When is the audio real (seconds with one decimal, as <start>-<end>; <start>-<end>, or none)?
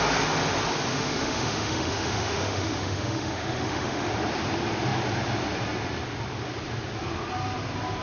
0.0-0.9; 4.1-8.0